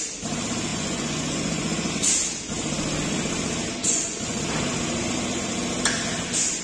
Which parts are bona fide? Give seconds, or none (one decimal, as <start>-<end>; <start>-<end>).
0.0-0.7; 1.9-3.8; 4.4-6.6

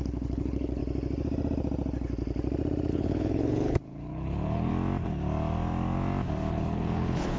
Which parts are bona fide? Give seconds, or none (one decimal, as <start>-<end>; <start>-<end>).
0.8-2.9; 4.7-6.5

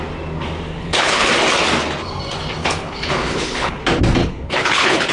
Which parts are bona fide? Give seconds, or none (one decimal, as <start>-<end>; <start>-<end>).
0.0-0.7; 1.3-2.6; 3.8-4.2